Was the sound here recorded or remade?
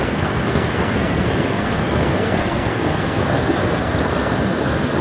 remade